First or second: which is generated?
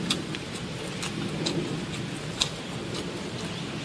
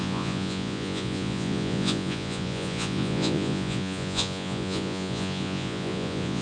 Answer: second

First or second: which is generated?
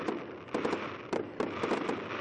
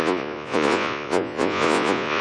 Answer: second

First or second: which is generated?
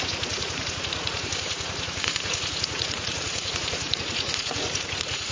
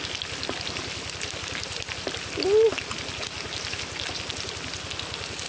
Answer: first